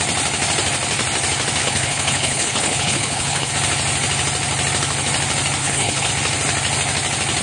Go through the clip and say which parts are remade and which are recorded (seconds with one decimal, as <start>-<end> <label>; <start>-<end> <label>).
0.0-1.6 recorded; 1.6-3.5 remade; 3.5-5.6 recorded; 5.6-6.1 remade; 6.1-7.4 recorded